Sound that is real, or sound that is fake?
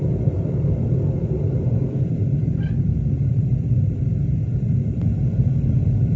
fake